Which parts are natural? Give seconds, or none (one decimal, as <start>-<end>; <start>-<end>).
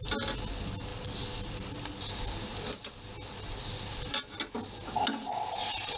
0.0-6.0